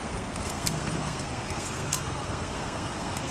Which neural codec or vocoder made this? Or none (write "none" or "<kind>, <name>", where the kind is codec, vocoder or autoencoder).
codec, SNAC